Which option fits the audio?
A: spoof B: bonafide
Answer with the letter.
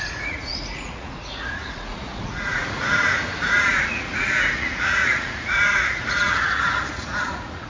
A